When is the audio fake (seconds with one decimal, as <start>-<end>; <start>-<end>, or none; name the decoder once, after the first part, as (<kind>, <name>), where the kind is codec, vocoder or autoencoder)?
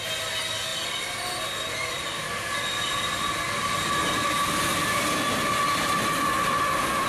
none